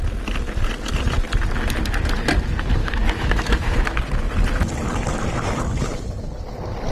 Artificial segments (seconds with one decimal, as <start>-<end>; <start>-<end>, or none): 2.8-4.0